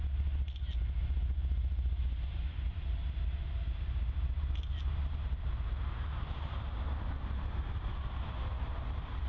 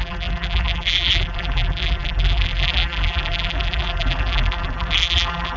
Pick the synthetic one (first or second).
second